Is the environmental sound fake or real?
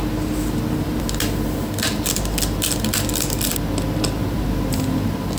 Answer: real